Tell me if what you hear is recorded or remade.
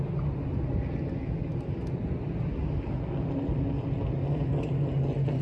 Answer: recorded